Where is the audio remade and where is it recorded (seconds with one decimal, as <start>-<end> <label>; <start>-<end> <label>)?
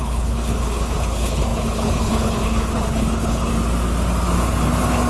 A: 0.0-3.5 remade; 3.5-5.1 recorded